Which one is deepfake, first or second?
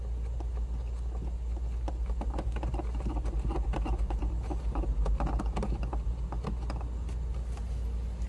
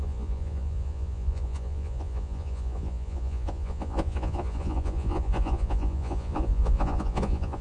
second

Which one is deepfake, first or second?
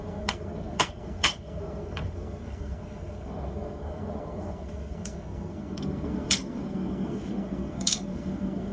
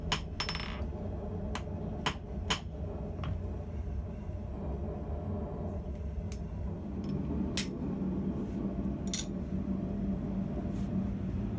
first